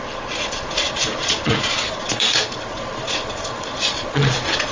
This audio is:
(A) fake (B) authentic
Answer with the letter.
A